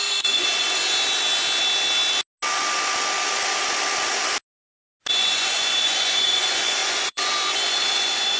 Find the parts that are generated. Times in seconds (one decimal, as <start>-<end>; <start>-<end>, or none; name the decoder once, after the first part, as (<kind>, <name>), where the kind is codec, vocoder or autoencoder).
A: 0.0-0.8 (vocoder, Vocos); 5.1-8.4